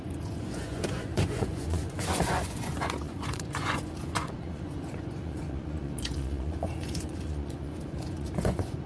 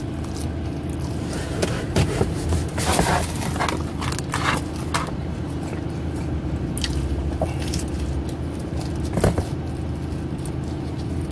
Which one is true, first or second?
second